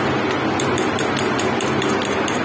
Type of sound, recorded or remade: recorded